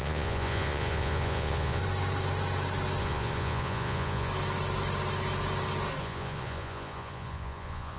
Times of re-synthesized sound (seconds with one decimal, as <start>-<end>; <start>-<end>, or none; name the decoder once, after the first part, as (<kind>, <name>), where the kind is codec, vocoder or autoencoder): 0.0-1.8 (vocoder, Vocos); 3.0-4.3; 6.0-8.0